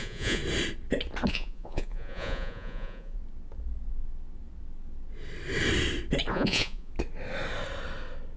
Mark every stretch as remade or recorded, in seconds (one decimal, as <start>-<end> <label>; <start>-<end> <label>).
0.0-0.4 remade; 0.4-1.3 recorded; 1.3-3.2 remade; 3.2-6.3 recorded; 6.3-6.9 remade; 6.9-8.4 recorded